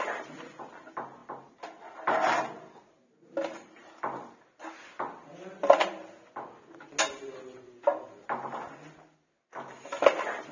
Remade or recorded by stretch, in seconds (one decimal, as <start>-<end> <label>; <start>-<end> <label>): 0.0-10.5 recorded